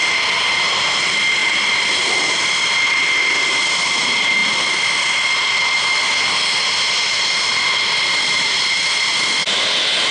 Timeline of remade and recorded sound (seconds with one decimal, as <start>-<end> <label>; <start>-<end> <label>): 0.0-10.1 recorded